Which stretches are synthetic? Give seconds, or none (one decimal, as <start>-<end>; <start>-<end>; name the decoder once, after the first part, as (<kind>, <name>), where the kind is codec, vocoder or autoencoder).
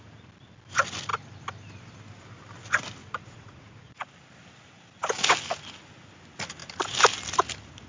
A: 3.0-4.1 (vocoder, Vocos)